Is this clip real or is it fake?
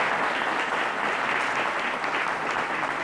real